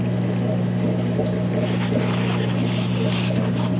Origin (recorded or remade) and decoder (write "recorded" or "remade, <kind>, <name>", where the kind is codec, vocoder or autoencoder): recorded